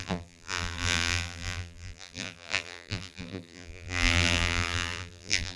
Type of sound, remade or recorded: remade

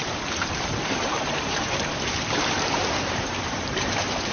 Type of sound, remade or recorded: remade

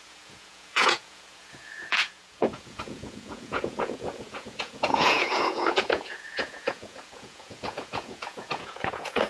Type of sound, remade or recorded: remade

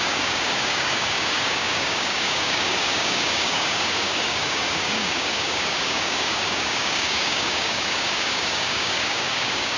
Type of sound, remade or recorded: remade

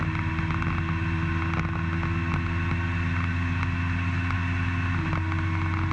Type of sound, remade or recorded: recorded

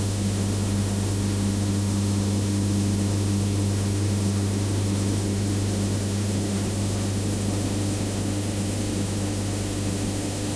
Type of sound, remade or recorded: remade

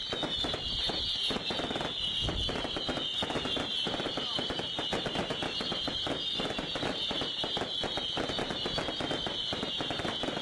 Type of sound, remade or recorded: recorded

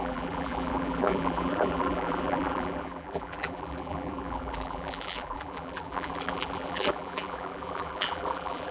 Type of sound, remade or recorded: remade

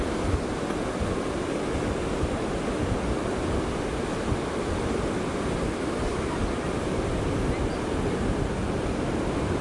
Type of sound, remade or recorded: recorded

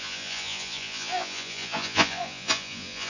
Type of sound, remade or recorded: remade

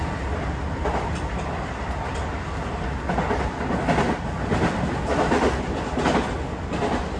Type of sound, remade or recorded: recorded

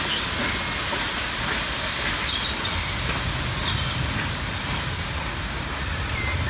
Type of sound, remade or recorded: recorded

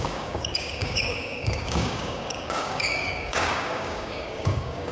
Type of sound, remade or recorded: remade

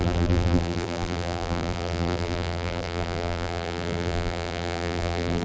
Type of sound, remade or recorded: remade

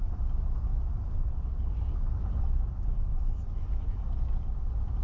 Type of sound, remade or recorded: recorded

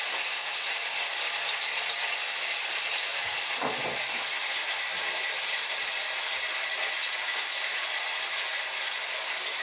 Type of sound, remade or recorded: remade